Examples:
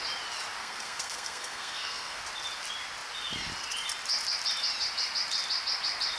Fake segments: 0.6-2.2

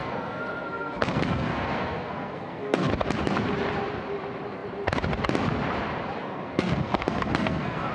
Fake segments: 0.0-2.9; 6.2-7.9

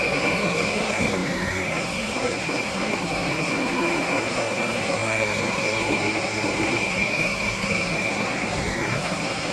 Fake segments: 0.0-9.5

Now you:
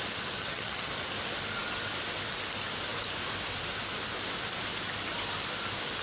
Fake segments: 0.4-0.9